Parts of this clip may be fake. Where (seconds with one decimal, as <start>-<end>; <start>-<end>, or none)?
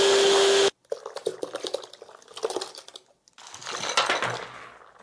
none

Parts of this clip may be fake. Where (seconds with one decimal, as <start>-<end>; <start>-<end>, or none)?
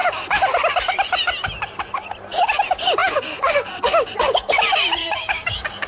5.0-5.9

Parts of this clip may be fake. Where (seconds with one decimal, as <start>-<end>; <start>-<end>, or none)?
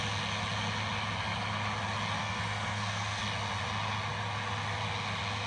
2.2-3.2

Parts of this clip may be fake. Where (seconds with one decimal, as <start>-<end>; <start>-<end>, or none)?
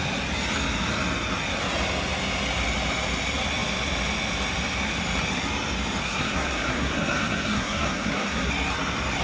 6.0-8.5